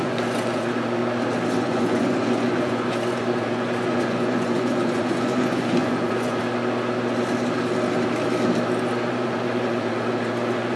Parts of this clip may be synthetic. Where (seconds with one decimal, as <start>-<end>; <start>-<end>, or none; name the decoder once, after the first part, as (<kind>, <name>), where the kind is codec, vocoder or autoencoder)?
0.0-1.0 (vocoder, Vocos); 1.6-6.4; 9.1-10.8